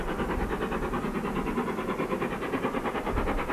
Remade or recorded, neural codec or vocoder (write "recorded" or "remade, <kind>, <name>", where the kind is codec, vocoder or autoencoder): recorded